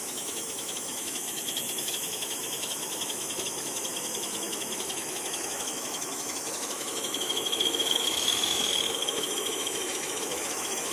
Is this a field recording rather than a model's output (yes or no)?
no